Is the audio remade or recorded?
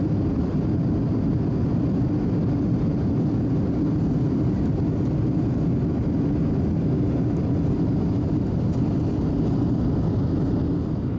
recorded